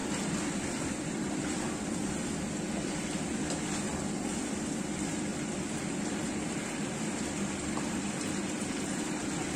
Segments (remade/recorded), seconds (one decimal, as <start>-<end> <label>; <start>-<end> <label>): 0.0-5.3 recorded; 5.3-9.2 remade; 9.2-9.6 recorded